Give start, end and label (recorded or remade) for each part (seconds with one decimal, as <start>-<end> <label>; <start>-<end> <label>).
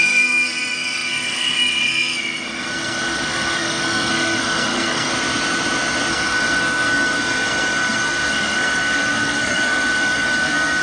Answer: 0.0-5.1 remade; 5.1-6.1 recorded; 6.1-10.8 remade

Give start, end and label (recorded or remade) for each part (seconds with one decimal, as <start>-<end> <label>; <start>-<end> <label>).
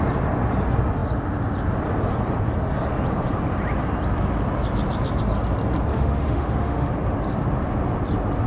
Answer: 0.0-5.9 recorded; 5.9-6.9 remade; 6.9-8.5 recorded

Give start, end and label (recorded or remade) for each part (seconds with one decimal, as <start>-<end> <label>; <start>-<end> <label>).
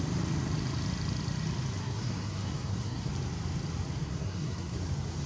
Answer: 0.0-1.8 recorded; 1.8-3.1 remade; 3.1-4.0 recorded; 4.0-4.8 remade; 4.8-5.3 recorded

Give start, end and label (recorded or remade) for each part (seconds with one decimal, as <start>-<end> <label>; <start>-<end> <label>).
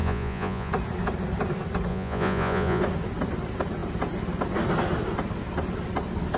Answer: 0.0-0.7 remade; 0.7-1.9 recorded; 1.9-2.8 remade; 2.8-6.4 recorded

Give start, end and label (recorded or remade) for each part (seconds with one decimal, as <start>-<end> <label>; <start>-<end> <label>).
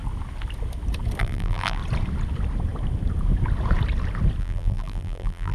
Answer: 0.0-1.2 recorded; 1.2-1.8 remade; 1.8-4.4 recorded; 4.4-5.5 remade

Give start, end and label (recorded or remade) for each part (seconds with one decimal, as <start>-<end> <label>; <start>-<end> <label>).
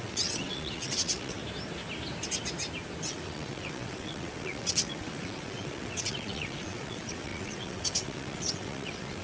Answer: 0.0-1.4 remade; 1.4-3.1 recorded; 3.1-9.2 remade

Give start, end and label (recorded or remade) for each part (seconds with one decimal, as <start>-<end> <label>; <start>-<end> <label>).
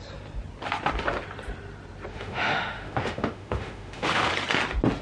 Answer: 0.0-2.1 recorded; 2.1-4.3 remade; 4.3-5.0 recorded